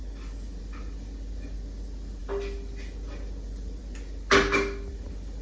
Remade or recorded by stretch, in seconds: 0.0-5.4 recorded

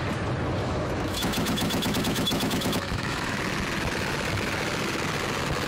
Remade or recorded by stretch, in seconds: 0.0-0.6 recorded; 0.6-3.4 remade; 3.4-5.7 recorded

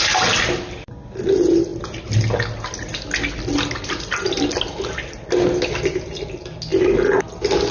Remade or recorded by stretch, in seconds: 0.0-7.7 recorded

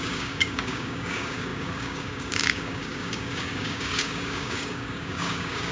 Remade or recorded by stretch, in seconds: 0.0-5.7 remade